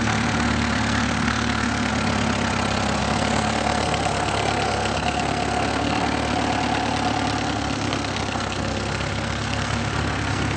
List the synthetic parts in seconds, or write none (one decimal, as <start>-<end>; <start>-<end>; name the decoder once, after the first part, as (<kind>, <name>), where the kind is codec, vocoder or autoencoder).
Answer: 0.0-1.9 (codec, SNAC); 3.0-6.3; 7.4-10.6